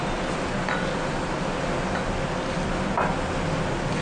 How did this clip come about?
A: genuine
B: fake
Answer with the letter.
A